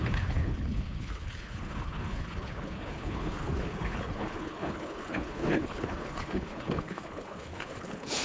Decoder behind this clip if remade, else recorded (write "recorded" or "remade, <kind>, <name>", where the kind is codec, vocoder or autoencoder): remade, codec, HILCodec